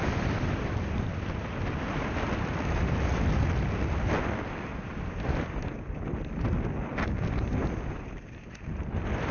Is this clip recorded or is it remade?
recorded